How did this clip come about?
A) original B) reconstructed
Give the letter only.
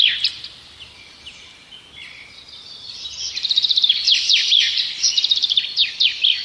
B